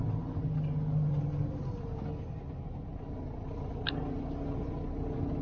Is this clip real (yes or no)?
yes